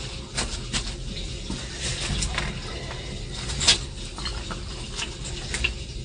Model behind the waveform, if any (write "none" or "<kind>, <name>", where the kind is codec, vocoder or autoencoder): none